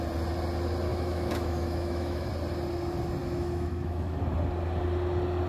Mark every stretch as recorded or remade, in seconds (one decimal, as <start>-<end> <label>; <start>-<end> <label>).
0.0-0.9 recorded; 0.9-2.3 remade; 2.3-3.2 recorded; 3.2-4.2 remade; 4.2-5.5 recorded